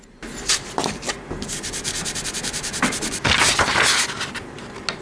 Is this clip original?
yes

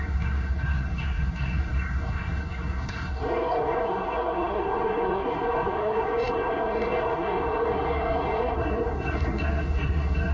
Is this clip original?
no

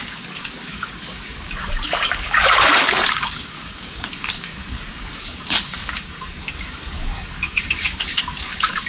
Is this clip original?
no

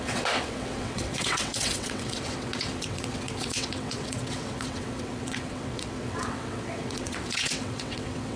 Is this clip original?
no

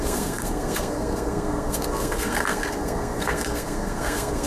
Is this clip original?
no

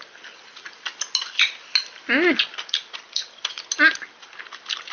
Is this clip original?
yes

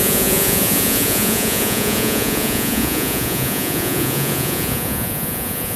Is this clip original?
no